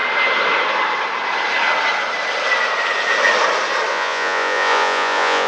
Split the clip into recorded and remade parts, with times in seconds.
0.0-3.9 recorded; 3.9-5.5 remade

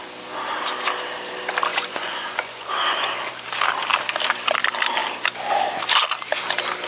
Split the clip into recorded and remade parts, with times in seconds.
0.0-1.7 recorded; 1.7-3.1 remade; 3.1-6.9 recorded

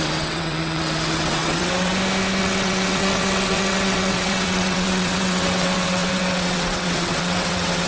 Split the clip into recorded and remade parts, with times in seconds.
0.0-1.9 remade; 1.9-2.4 recorded; 2.4-7.9 remade

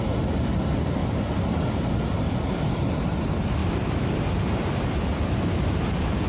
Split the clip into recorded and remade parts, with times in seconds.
0.0-1.0 recorded; 1.0-3.0 remade; 3.0-3.6 recorded; 3.6-4.3 remade; 4.3-6.3 recorded

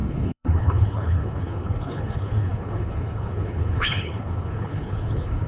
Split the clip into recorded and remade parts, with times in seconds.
0.0-5.5 remade